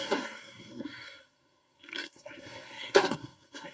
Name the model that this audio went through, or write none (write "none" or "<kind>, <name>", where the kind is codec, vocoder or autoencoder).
codec, SNAC